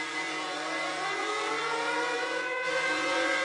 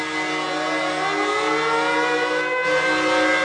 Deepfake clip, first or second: first